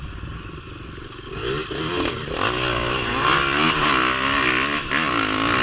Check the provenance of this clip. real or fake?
real